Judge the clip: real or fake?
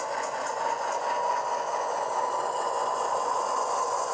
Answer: fake